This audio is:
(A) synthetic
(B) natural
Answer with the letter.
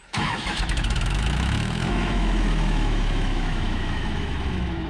A